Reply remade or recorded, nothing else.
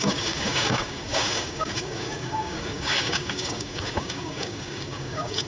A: remade